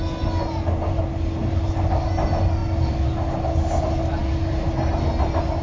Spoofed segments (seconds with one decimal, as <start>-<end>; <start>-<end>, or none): none